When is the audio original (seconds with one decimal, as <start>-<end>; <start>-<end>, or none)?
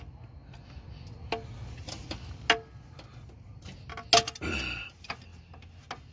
0.0-6.1